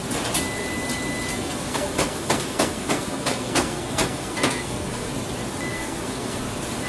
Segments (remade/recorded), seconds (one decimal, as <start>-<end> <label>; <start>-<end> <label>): 0.0-1.3 recorded; 1.3-5.1 remade; 5.1-5.7 recorded; 5.7-6.4 remade; 6.4-6.9 recorded